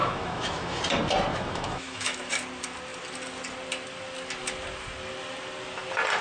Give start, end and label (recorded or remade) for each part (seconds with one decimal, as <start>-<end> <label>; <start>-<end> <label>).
0.0-0.8 remade; 0.8-1.3 recorded; 1.3-2.3 remade; 2.3-6.2 recorded